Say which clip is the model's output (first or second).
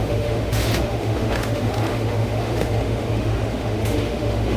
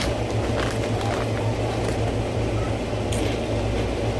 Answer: first